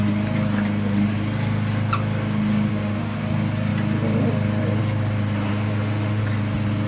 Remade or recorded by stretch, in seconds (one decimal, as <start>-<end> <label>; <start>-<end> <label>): 0.0-2.7 recorded; 2.7-3.3 remade; 3.3-5.5 recorded; 5.5-6.2 remade; 6.2-6.9 recorded